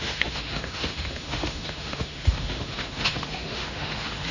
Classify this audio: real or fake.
fake